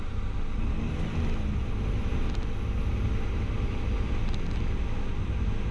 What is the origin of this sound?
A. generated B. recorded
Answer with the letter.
B